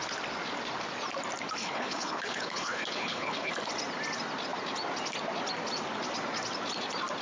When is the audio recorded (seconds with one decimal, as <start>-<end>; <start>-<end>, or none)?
0.0-1.6; 3.5-7.2